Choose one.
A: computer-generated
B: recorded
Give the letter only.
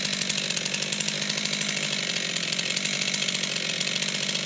B